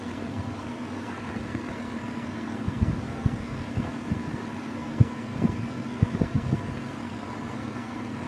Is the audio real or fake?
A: fake